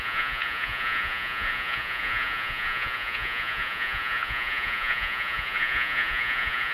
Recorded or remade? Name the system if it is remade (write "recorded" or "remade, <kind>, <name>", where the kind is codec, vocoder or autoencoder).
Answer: remade, vocoder, Vocos